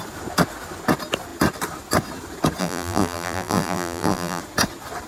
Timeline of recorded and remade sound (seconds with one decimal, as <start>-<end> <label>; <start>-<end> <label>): 0.0-2.6 recorded; 2.6-4.4 remade; 4.4-5.1 recorded